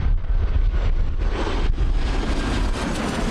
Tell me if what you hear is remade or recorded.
recorded